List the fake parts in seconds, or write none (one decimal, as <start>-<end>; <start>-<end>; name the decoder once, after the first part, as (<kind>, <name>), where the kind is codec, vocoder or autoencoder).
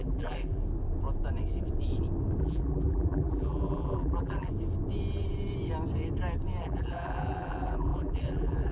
0.0-0.6 (vocoder, BigVGAN v2); 2.4-4.5; 6.6-8.7